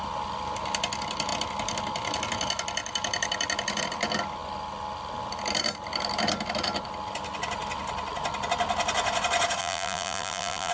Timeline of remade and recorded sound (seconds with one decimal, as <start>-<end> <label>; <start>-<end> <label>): 0.0-9.6 recorded; 9.6-10.7 remade